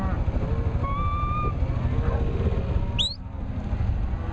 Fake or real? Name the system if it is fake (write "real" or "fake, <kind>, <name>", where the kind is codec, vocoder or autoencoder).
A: real